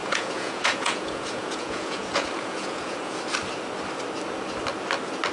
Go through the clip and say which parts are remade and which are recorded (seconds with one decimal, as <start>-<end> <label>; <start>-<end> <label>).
0.0-3.2 remade; 3.2-5.3 recorded